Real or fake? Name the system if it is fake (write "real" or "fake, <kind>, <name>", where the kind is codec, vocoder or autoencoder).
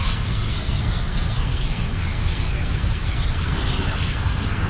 fake, codec, SNAC